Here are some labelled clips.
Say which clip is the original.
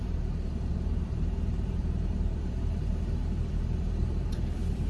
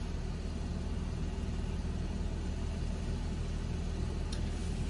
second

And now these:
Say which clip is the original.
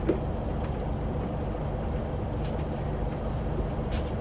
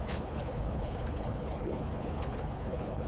first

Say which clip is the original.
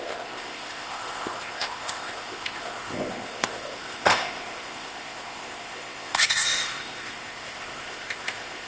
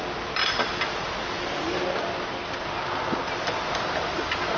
second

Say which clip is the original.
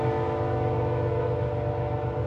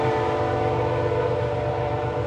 first